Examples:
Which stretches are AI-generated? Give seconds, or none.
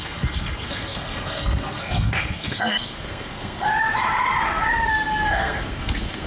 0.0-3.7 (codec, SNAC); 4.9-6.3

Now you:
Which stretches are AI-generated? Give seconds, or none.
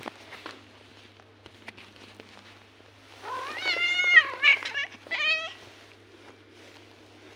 none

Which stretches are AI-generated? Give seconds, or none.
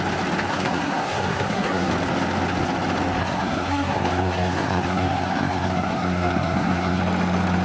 0.5-1.9 (codec, SNAC); 3.2-7.0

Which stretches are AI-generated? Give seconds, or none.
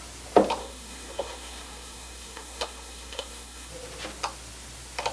0.6-3.7 (codec, SNAC)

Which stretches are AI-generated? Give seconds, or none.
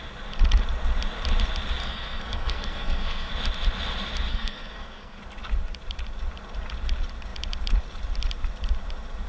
1.8-3.3 (codec, SNAC); 4.3-5.2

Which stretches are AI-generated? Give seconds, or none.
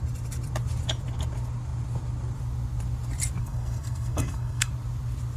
3.4-4.7 (codec, SNAC)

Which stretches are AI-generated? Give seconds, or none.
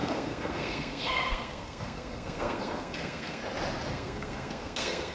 0.0-3.4 (codec, SNAC); 3.9-5.1